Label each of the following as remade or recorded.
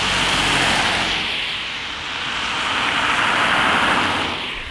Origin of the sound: recorded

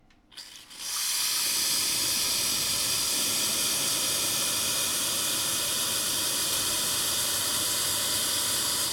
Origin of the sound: recorded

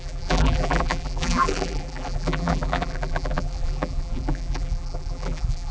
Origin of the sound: remade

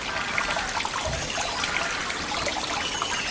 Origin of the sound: recorded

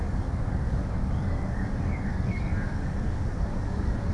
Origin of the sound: remade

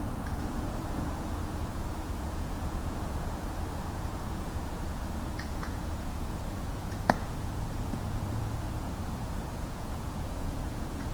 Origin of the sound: remade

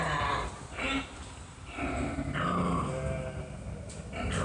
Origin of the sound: recorded